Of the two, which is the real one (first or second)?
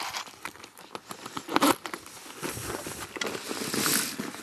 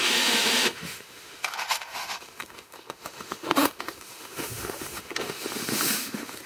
first